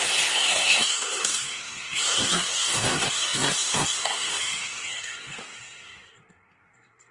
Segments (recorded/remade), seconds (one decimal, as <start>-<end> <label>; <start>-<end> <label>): 0.0-7.1 remade